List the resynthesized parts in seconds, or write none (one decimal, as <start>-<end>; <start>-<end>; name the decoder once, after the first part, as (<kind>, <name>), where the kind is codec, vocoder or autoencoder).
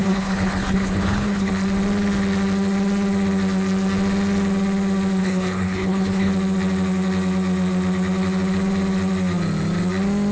0.0-1.5 (codec, HILCodec); 5.2-6.3